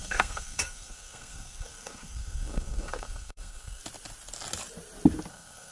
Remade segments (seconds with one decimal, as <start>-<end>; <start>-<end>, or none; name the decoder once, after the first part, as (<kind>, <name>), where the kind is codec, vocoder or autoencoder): 0.0-3.8 (codec, SNAC); 5.3-5.7